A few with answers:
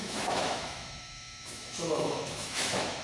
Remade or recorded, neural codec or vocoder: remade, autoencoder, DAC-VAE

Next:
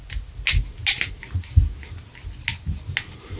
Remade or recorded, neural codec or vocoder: recorded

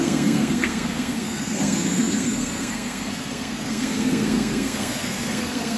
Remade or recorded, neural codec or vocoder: remade, codec, SNAC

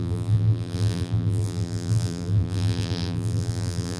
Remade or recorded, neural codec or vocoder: remade, vocoder, BigVGAN v2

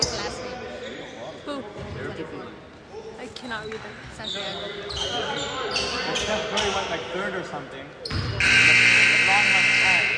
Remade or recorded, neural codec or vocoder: recorded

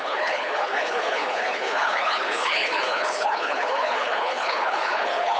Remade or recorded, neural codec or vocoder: remade, codec, HILCodec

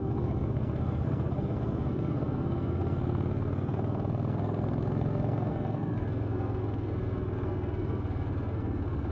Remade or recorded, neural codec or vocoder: remade, codec, SNAC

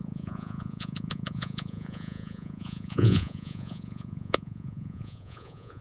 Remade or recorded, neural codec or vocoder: remade, vocoder, Vocos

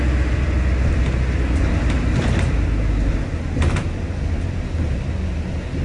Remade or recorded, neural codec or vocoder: recorded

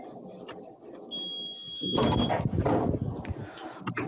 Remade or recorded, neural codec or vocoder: recorded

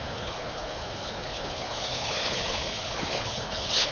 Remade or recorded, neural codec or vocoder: remade, codec, HILCodec